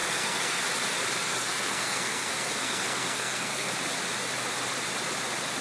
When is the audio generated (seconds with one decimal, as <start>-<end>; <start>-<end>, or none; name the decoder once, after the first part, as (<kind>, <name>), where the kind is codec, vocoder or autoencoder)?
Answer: 0.0-0.6 (codec, SNAC); 1.3-3.7